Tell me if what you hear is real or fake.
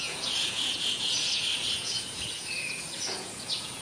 fake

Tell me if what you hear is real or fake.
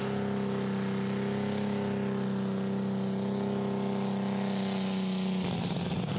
real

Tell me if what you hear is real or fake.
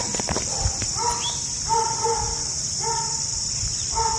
real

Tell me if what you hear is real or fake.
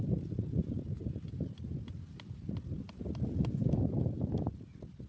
real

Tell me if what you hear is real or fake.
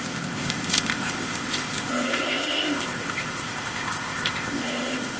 fake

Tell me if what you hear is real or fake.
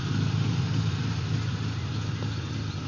real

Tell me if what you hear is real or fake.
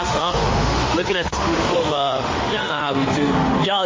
fake